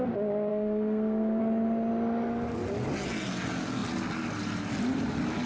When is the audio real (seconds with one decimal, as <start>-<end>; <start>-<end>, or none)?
0.0-0.5; 1.4-5.5